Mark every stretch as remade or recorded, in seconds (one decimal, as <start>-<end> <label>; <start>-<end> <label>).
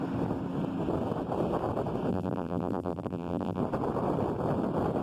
0.0-2.1 recorded; 2.1-3.6 remade; 3.6-5.0 recorded